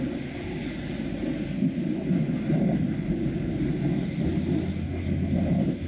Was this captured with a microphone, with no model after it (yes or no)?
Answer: yes